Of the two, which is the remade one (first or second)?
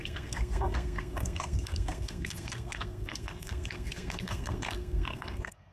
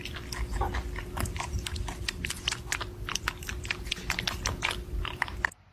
first